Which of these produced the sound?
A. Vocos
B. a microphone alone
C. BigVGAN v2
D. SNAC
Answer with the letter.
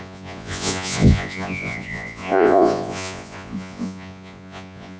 A